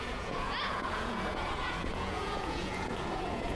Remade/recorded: remade